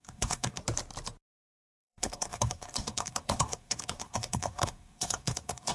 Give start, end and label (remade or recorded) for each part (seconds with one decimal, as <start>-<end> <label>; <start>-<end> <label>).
0.0-0.6 remade; 0.6-1.7 recorded; 1.7-5.7 remade